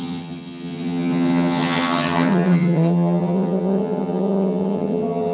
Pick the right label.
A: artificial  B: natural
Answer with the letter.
A